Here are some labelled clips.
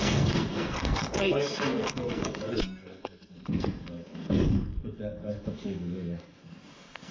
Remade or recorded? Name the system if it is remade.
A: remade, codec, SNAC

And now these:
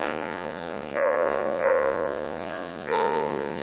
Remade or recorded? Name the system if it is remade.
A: remade, vocoder, Vocos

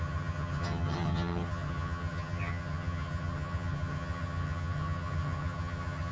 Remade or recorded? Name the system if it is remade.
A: remade, vocoder, HiFi-GAN